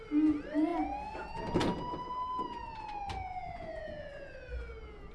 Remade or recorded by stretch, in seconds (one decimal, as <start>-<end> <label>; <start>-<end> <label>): 0.0-5.1 recorded